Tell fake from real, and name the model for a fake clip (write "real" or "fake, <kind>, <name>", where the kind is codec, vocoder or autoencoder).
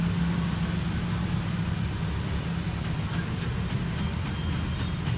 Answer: real